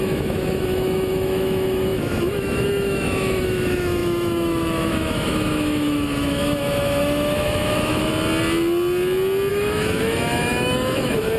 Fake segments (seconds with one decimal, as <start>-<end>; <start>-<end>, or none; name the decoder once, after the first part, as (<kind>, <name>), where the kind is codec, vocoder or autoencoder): 0.0-8.1 (autoencoder, DAC-VAE); 9.5-11.4